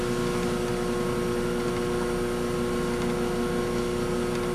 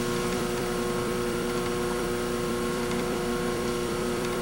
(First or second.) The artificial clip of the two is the second